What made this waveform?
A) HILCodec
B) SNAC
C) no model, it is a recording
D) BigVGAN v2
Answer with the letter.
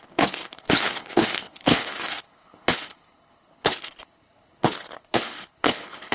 A